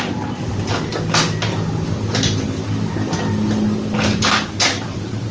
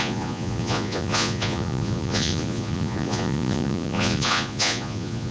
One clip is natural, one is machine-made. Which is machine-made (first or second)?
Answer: second